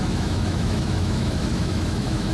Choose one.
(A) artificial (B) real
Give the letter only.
A